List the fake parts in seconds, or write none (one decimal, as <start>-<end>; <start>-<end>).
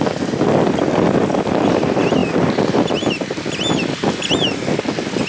none